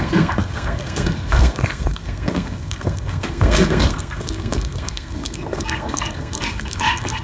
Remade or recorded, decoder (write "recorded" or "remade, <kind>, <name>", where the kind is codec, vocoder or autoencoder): remade, codec, SNAC